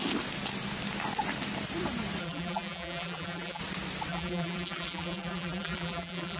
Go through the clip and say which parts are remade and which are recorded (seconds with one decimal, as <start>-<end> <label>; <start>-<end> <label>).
0.0-2.2 recorded; 2.2-3.6 remade; 3.6-4.1 recorded; 4.1-6.4 remade